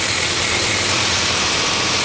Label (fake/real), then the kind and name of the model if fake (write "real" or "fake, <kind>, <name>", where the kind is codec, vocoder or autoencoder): real